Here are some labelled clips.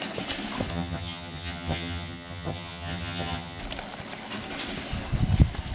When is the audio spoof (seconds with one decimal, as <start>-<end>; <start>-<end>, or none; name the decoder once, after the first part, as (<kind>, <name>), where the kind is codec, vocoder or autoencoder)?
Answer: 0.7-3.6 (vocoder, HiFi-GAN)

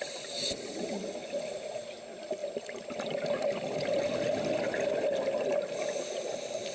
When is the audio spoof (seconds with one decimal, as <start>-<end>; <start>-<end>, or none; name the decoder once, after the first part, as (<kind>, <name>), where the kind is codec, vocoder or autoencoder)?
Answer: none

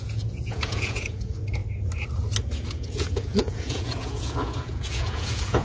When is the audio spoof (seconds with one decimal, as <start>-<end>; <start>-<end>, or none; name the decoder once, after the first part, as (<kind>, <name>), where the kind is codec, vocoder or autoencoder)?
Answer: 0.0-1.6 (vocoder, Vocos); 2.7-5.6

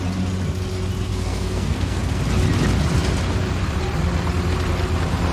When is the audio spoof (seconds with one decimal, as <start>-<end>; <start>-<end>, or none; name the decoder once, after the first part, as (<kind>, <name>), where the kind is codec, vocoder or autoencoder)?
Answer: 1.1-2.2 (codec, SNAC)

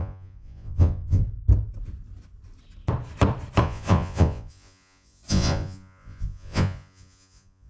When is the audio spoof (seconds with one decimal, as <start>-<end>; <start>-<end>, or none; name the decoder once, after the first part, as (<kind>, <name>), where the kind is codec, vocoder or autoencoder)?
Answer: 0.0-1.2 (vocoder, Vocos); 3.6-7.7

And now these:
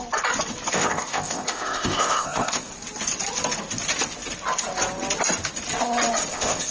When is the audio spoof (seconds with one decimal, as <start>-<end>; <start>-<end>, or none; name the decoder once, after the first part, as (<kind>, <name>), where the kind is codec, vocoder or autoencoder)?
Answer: 0.7-2.7 (codec, ZipCodec); 6.3-6.7